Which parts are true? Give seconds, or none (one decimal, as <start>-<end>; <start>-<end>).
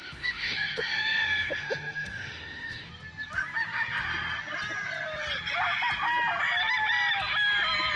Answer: 2.9-8.0